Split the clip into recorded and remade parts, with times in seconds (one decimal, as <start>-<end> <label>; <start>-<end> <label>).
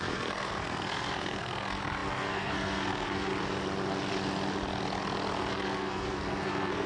0.0-3.3 remade; 3.3-5.5 recorded; 5.5-6.9 remade